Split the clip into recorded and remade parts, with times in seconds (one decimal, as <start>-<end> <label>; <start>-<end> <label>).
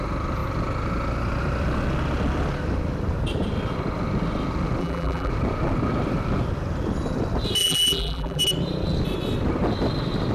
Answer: 0.0-4.8 recorded; 4.8-5.3 remade; 5.3-7.6 recorded; 7.6-8.4 remade; 8.4-10.3 recorded